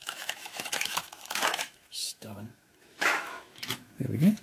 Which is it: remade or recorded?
remade